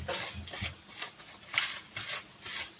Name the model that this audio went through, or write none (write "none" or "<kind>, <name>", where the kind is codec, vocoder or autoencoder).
none